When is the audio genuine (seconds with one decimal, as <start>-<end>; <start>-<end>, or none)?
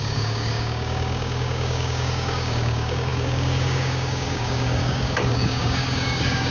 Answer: none